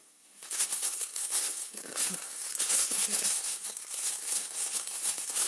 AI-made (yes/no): yes